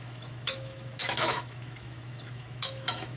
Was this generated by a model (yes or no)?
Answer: yes